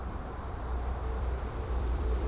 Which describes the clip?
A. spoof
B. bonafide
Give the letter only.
A